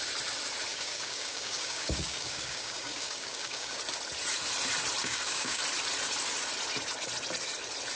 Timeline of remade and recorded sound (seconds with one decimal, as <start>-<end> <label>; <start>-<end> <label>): 0.0-0.7 recorded; 0.7-3.8 remade; 3.8-5.0 recorded; 5.0-5.6 remade; 5.6-8.0 recorded